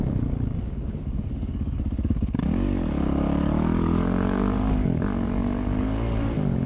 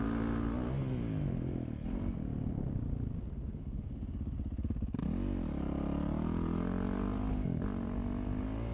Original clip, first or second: second